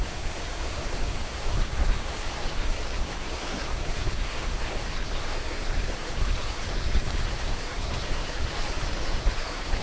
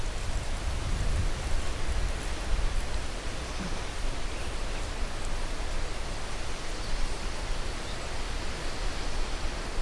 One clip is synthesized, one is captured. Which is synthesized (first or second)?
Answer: first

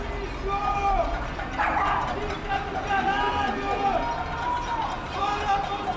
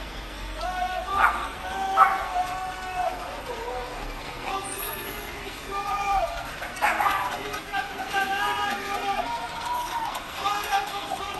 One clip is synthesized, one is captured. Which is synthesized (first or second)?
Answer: second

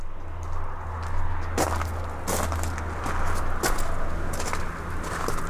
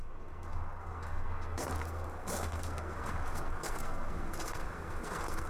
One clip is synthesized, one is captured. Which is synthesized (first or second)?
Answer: second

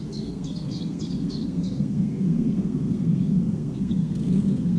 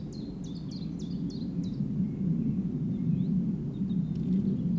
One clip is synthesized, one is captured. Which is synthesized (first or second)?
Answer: first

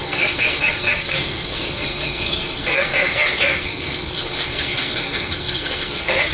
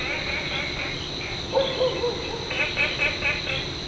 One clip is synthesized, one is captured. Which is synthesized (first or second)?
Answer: first